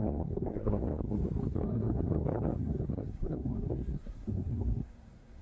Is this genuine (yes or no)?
no